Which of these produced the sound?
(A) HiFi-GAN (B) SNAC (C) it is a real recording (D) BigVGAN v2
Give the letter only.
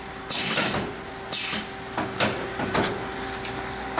C